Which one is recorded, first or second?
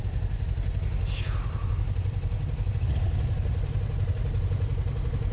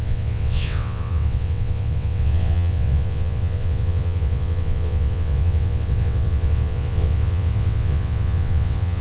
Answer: first